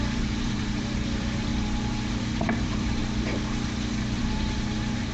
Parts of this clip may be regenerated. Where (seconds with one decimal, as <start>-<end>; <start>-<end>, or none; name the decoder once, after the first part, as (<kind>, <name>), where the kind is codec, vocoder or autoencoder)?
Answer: 0.0-1.5 (vocoder, BigVGAN v2); 2.1-3.0; 4.2-5.1